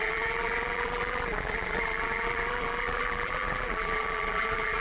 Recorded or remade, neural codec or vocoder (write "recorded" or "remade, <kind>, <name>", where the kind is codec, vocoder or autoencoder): remade, vocoder, BigVGAN v2